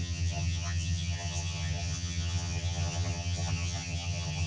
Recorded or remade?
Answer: remade